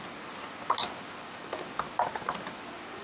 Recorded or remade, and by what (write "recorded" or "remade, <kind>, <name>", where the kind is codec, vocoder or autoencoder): recorded